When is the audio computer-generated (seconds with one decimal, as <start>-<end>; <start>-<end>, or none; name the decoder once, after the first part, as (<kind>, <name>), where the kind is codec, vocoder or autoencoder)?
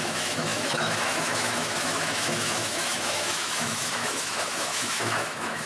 0.0-5.7 (autoencoder, DAC-VAE)